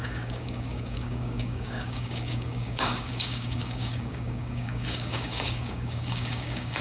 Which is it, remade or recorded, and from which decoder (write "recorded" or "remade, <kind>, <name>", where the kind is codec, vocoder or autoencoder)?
remade, codec, DAC